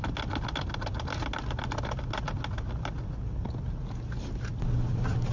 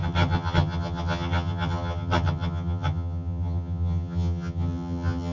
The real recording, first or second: first